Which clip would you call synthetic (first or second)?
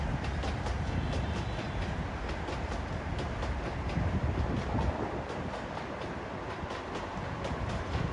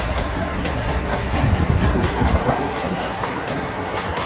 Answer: second